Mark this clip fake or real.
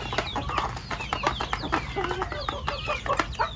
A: real